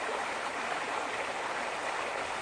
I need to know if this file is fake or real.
real